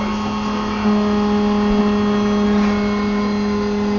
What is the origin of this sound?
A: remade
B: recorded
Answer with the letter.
B